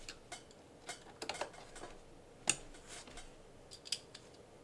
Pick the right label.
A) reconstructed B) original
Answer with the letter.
B